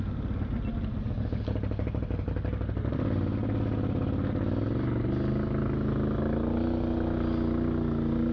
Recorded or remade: recorded